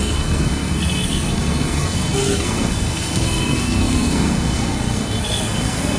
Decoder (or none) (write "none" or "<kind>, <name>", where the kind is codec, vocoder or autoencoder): codec, SNAC